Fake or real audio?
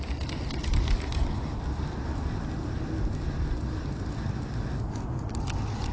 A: real